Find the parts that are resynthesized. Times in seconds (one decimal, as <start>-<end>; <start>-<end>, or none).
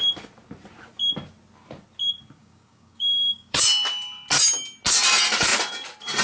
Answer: 2.4-3.6